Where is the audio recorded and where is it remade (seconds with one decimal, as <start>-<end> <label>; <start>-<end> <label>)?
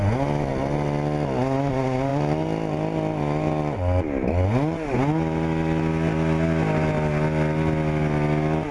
0.0-8.7 recorded